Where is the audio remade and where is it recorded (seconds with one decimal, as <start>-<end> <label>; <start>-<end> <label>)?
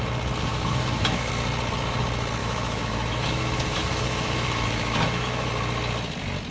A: 0.0-0.5 recorded; 0.5-1.3 remade; 1.3-2.4 recorded; 2.4-5.5 remade; 5.5-6.5 recorded